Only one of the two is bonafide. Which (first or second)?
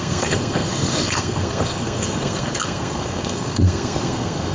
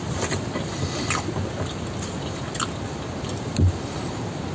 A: second